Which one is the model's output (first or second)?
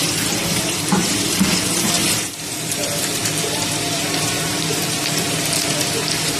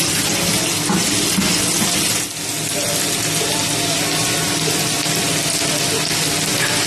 first